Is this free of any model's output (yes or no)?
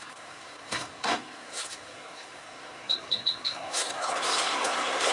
no